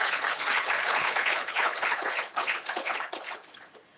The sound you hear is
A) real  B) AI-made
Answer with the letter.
B